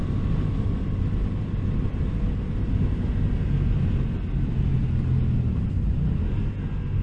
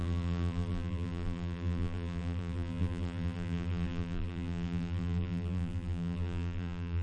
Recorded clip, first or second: first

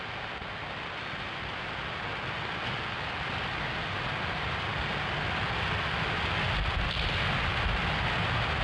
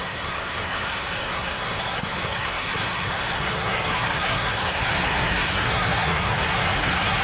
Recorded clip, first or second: first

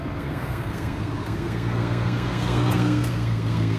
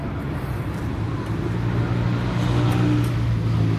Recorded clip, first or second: second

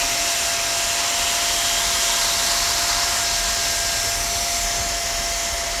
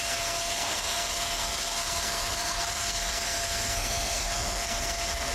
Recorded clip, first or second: first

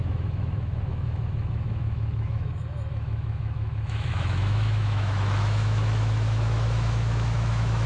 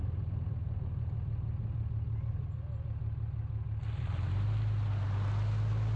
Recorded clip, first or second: second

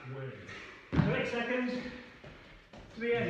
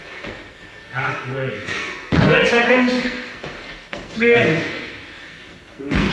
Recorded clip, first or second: first